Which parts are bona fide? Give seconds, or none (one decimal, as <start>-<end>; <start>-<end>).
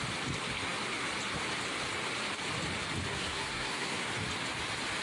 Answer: 0.0-3.1; 4.1-5.0